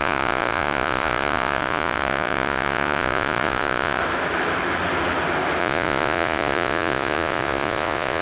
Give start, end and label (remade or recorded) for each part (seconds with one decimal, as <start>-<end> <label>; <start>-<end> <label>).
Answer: 0.0-4.0 remade; 4.0-5.6 recorded; 5.6-8.2 remade